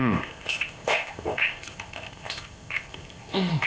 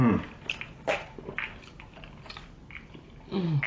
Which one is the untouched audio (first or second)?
second